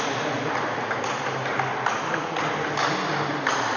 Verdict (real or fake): real